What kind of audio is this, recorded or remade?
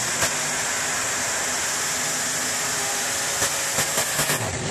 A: recorded